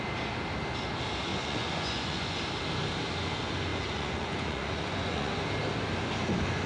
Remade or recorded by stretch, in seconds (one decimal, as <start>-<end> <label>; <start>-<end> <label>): 0.0-1.3 recorded; 1.3-2.4 remade; 2.4-3.7 recorded; 3.7-5.3 remade; 5.3-6.7 recorded